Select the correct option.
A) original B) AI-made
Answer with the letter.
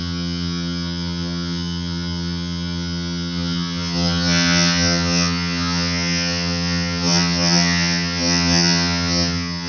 B